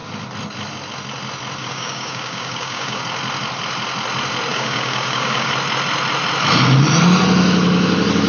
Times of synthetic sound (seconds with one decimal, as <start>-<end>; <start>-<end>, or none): 1.6-3.0; 4.5-5.5